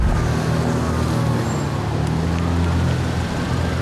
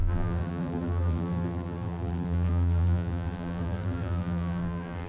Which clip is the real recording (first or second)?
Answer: first